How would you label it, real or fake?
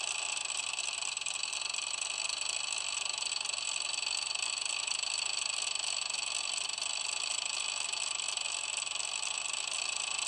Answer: real